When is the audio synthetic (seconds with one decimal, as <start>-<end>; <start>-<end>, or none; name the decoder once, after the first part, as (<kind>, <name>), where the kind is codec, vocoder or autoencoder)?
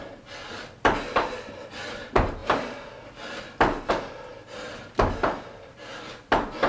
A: none